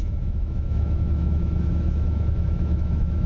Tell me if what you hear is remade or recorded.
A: remade